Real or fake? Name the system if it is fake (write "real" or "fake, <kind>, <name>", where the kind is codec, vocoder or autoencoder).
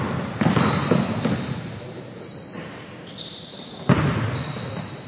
real